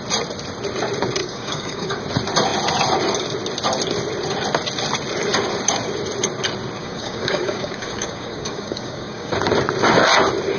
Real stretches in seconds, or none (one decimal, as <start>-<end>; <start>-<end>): 0.0-1.2; 2.0-6.8; 9.3-10.6